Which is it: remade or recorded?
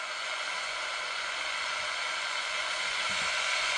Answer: remade